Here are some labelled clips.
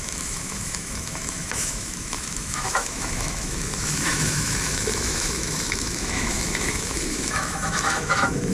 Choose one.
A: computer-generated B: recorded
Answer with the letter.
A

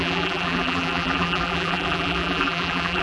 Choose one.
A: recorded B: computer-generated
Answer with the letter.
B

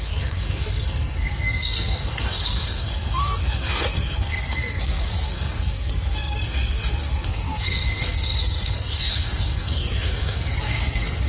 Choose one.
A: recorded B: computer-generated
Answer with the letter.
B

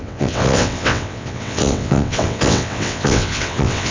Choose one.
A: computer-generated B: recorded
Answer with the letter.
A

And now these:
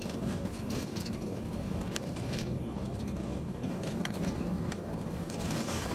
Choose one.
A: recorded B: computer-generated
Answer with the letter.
B